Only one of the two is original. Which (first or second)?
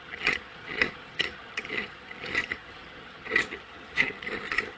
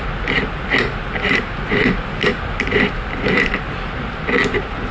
second